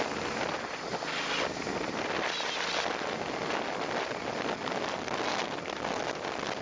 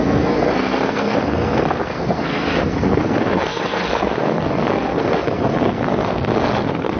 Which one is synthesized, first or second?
second